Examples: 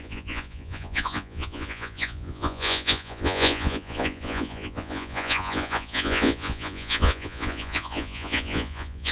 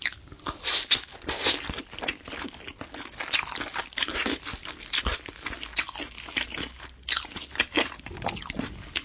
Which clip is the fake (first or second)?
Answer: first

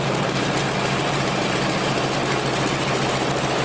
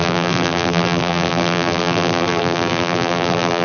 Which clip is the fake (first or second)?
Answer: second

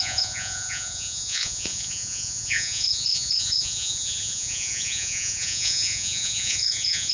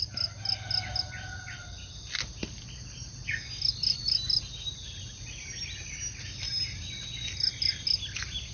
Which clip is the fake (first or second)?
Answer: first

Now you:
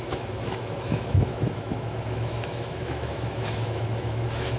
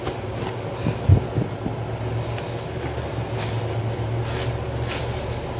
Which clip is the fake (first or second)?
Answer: first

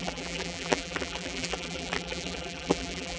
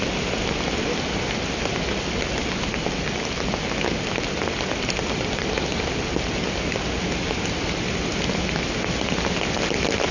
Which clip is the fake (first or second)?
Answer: first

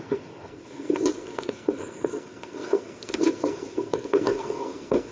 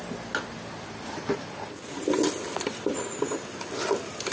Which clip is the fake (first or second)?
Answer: first